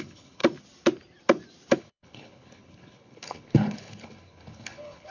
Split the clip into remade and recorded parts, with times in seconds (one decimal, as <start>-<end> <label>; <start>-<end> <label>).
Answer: 0.0-0.4 remade; 0.4-1.8 recorded; 1.8-5.1 remade